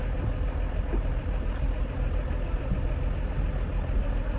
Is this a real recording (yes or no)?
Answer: yes